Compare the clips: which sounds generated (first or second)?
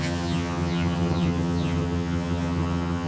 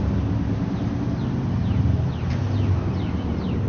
first